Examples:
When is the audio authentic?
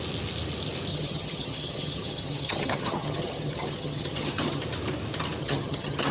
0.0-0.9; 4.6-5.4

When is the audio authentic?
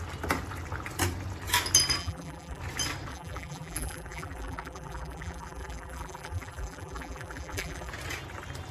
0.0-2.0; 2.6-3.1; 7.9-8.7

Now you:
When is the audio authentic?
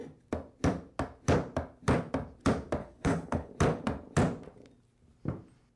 0.0-2.8; 3.5-5.8